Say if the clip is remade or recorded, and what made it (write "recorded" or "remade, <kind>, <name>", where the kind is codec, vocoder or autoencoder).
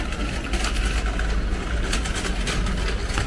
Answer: recorded